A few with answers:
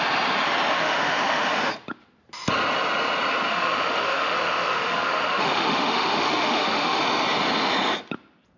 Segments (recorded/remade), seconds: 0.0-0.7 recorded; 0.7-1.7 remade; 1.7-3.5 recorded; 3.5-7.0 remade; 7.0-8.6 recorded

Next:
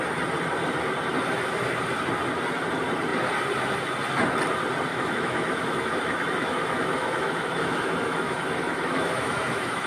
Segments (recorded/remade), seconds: 0.0-4.9 recorded; 4.9-9.9 remade

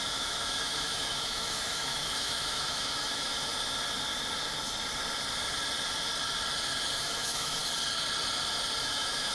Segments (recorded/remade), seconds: 0.0-3.5 remade; 3.5-7.0 recorded; 7.0-7.6 remade; 7.6-8.8 recorded; 8.8-9.3 remade

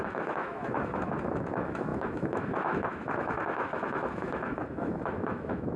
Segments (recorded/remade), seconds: 0.0-5.8 remade

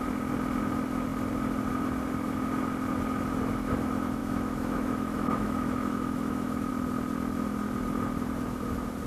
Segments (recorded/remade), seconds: 0.0-4.2 recorded; 4.2-6.7 remade; 6.7-9.1 recorded

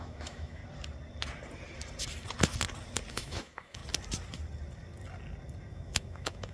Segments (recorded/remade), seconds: 0.0-0.6 remade; 0.6-3.1 recorded; 3.1-3.8 remade; 3.8-5.7 recorded; 5.7-6.5 remade

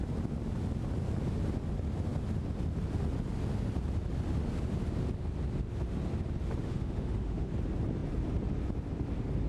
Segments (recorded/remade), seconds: 0.0-6.6 recorded; 6.6-7.5 remade; 7.5-9.5 recorded